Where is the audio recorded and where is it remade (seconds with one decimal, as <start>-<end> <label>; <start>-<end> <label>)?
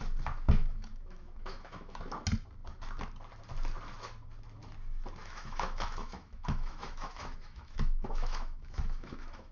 0.0-0.6 recorded; 0.6-2.0 remade; 2.0-5.2 recorded; 5.2-9.5 remade